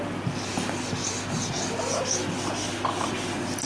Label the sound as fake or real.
real